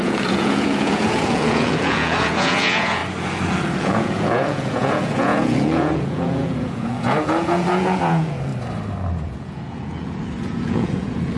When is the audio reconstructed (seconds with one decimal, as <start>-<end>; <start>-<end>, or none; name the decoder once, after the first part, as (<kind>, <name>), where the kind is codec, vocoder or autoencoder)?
0.0-3.0 (vocoder, Vocos); 3.8-8.5; 9.1-11.4